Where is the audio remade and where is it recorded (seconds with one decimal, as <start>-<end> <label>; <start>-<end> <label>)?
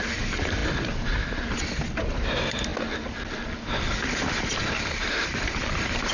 0.0-2.7 remade; 2.7-4.2 recorded; 4.2-6.1 remade